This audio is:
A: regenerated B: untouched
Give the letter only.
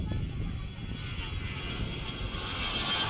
B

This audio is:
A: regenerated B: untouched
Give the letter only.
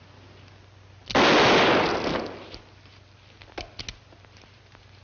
B